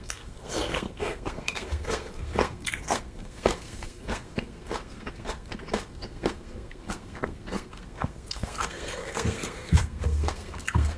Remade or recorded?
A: remade